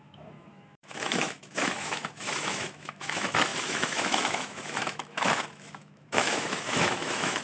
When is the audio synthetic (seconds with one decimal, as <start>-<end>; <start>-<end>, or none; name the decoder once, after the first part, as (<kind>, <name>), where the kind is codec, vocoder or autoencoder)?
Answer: 0.0-7.4 (autoencoder, DAC-VAE)